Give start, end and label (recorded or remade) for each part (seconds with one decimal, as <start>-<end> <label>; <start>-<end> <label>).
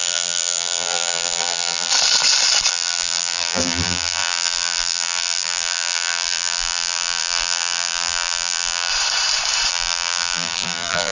0.0-1.9 remade; 1.9-2.7 recorded; 2.7-8.9 remade; 8.9-9.7 recorded; 9.7-11.1 remade